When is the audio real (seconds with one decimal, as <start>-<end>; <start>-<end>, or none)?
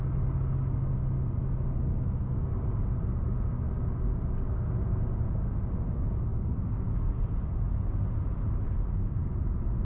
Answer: 0.0-9.8